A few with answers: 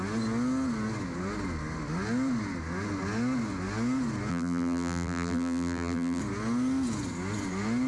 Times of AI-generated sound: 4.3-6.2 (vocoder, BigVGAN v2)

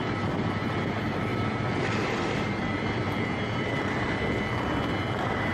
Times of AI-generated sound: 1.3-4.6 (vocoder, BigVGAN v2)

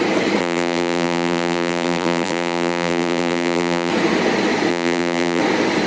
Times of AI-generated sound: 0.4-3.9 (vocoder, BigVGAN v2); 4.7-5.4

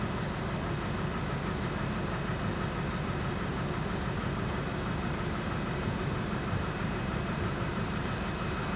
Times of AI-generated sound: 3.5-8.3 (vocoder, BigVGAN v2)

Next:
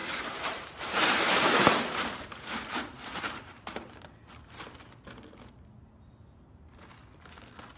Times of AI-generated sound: 0.0-3.9 (vocoder, BigVGAN v2)